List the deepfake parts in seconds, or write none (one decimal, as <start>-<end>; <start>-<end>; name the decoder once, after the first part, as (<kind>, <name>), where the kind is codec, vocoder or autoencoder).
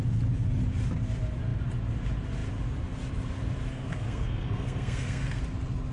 3.7-5.4 (codec, SNAC)